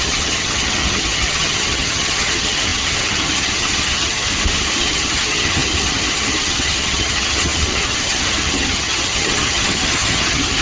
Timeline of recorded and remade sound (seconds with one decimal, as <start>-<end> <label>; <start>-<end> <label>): 0.0-4.3 remade; 4.3-4.8 recorded; 4.8-10.6 remade